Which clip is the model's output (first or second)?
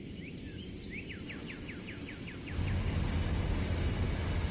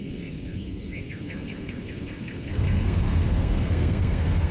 second